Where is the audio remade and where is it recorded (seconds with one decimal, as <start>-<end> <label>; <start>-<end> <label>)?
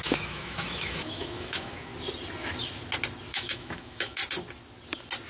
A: 0.0-1.9 remade; 1.9-3.3 recorded; 3.3-4.2 remade; 4.2-5.3 recorded